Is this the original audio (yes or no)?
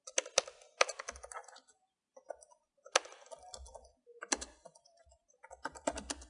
yes